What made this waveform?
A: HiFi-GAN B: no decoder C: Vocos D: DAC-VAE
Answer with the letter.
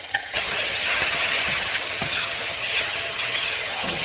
A